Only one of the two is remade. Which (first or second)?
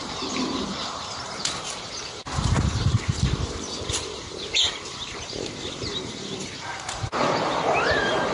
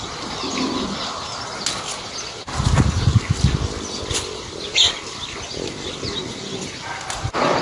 first